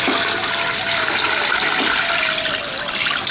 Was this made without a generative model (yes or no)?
yes